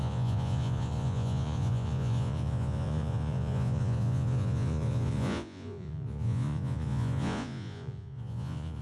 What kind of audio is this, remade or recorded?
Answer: remade